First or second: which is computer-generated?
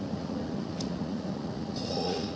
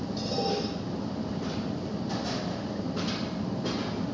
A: first